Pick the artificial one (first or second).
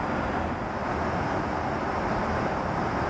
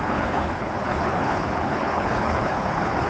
second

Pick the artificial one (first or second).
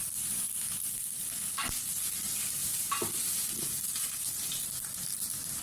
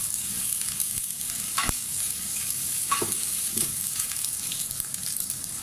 second